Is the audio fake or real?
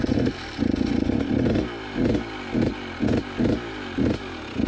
real